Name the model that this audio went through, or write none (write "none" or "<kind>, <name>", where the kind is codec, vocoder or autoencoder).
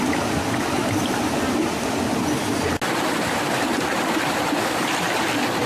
none